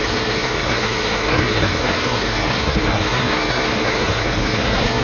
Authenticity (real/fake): fake